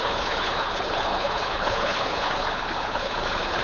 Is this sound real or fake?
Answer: fake